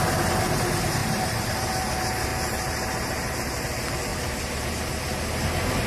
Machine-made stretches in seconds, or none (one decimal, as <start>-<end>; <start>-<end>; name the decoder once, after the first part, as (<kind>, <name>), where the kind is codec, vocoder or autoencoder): 1.0-1.7 (vocoder, BigVGAN v2); 2.3-3.6; 4.1-4.8